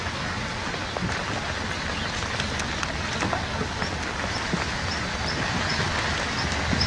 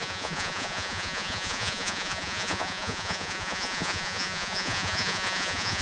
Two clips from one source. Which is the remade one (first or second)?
second